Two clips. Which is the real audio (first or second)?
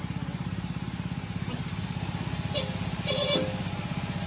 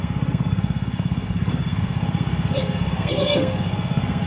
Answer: first